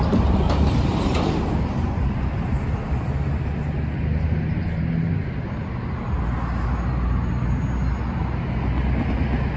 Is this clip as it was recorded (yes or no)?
yes